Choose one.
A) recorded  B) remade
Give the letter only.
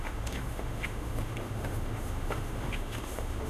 B